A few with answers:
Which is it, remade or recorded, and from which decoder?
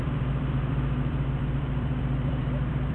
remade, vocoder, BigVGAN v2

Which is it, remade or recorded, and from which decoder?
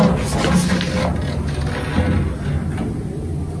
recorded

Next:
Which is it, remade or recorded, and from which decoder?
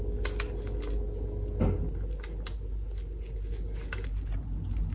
recorded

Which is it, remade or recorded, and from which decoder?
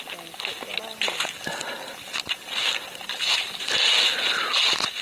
recorded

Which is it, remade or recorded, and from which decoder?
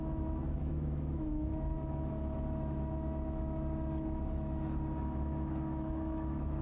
remade, autoencoder, DAC-VAE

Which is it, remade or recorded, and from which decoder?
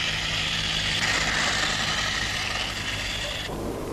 recorded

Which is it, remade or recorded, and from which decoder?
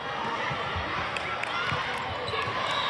recorded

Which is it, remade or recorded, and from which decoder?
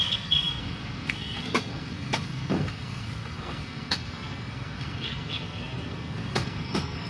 remade, codec, SNAC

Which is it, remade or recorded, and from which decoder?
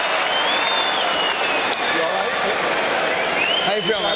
recorded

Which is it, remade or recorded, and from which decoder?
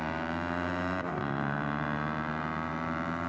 remade, vocoder, BigVGAN v2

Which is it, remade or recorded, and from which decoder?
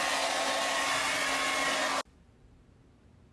recorded